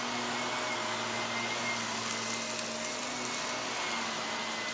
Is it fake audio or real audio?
real